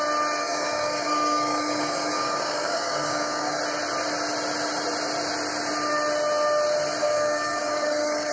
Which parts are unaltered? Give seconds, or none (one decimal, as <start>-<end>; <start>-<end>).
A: 0.0-0.4; 3.6-7.0